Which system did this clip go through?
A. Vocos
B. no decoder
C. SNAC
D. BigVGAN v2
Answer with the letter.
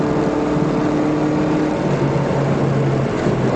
B